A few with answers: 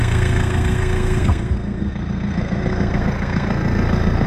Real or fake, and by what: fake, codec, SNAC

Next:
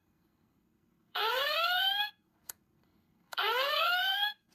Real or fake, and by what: fake, codec, SNAC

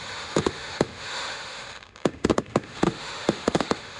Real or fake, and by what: fake, autoencoder, DAC-VAE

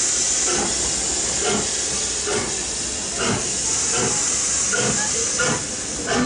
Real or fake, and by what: real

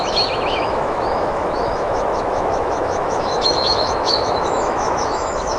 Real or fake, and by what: fake, autoencoder, DAC-VAE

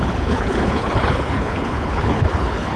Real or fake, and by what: fake, codec, HILCodec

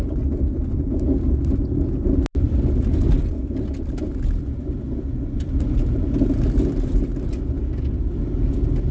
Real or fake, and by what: real